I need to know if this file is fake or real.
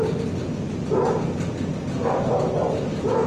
real